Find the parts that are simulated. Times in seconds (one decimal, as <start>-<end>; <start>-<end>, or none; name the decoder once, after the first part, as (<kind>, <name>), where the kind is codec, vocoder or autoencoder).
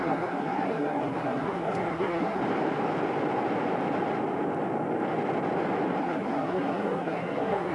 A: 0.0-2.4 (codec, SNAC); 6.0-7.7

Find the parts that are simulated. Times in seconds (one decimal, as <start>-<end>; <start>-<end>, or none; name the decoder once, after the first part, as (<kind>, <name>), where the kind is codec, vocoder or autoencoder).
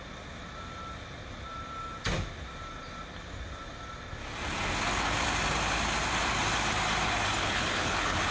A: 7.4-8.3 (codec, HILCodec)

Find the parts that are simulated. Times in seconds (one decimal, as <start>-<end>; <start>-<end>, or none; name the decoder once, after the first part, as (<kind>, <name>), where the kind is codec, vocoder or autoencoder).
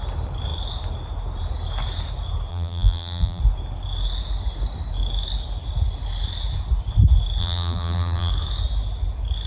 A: 2.5-3.4 (vocoder, BigVGAN v2); 7.4-8.3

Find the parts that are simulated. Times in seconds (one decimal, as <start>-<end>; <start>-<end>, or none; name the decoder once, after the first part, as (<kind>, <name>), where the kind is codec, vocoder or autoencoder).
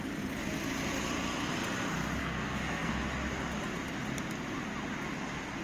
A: 2.2-3.0 (codec, SNAC)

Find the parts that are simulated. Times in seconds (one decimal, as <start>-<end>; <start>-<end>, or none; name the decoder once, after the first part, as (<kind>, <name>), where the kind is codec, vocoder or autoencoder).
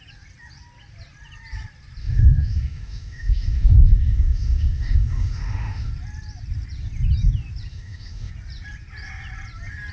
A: 2.0-5.9 (autoencoder, DAC-VAE); 7.7-8.3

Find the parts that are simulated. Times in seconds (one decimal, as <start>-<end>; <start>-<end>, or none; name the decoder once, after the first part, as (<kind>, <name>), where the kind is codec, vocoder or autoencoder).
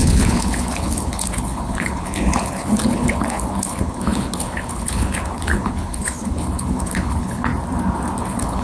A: 0.0-7.5 (codec, HILCodec); 8.2-8.6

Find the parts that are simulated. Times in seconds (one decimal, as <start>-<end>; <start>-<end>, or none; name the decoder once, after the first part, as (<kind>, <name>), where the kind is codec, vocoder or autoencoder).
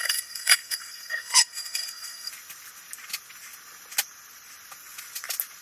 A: 0.0-2.3 (codec, SNAC)